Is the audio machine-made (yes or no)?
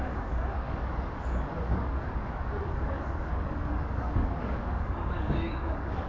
yes